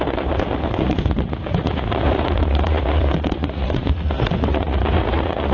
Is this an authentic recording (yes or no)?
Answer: no